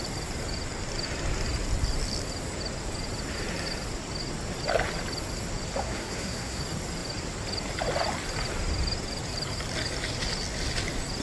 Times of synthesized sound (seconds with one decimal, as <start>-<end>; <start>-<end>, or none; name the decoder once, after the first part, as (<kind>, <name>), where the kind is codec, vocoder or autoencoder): 5.8-6.6 (codec, SNAC)